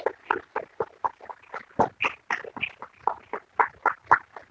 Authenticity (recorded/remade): recorded